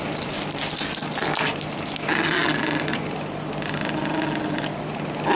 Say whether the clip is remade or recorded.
recorded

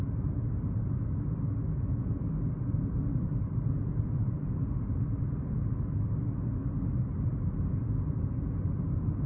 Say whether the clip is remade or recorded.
recorded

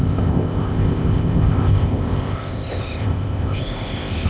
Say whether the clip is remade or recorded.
remade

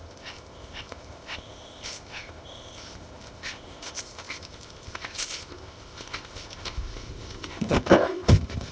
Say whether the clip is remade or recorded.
remade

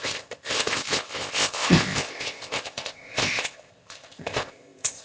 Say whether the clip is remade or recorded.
remade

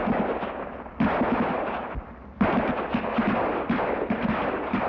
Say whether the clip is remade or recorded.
recorded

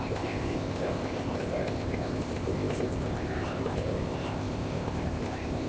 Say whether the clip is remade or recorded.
remade